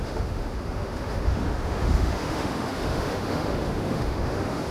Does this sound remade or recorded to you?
remade